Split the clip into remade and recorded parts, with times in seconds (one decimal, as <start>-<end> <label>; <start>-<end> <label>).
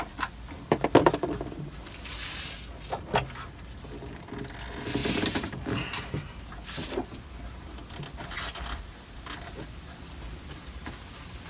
0.0-5.0 recorded; 5.0-5.7 remade; 5.7-11.5 recorded